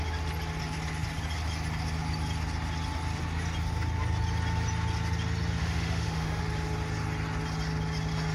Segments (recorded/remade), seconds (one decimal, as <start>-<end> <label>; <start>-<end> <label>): 0.0-5.6 recorded; 5.6-6.4 remade; 6.4-8.3 recorded